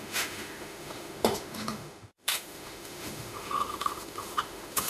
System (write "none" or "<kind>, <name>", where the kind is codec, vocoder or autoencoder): autoencoder, DAC-VAE